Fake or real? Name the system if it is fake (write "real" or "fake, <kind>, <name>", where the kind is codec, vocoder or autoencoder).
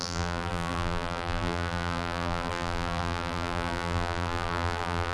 fake, vocoder, BigVGAN v2